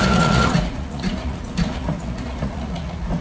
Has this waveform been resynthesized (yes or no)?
yes